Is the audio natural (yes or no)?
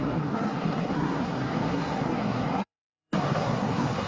no